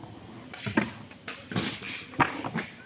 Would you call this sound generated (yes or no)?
no